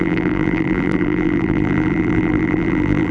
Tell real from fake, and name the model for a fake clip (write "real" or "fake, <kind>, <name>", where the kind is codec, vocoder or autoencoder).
fake, vocoder, BigVGAN v2